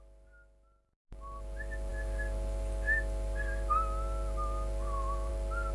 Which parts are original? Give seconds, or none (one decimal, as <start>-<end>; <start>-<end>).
0.0-5.7